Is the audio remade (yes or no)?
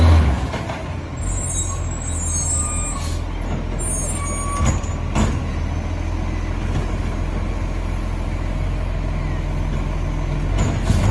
no